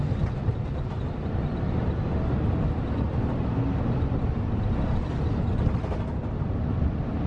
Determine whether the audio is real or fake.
real